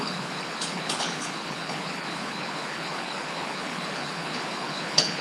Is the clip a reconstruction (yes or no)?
yes